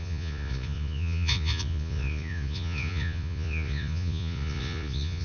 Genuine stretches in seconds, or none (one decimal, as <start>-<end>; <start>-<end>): none